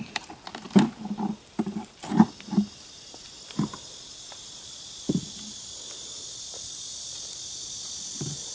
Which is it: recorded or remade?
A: recorded